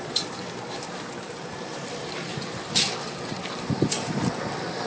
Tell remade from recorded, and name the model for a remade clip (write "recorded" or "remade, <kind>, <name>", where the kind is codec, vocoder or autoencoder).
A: remade, vocoder, BigVGAN v2